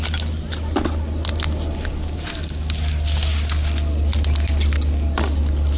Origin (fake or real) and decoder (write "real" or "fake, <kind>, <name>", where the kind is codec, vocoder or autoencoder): real